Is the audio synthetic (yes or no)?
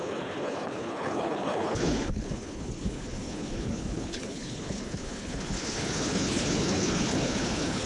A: yes